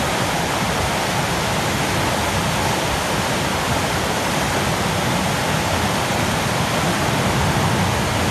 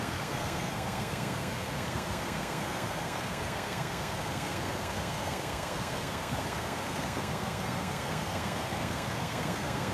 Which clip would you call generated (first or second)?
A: second